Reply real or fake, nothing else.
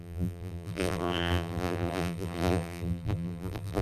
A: fake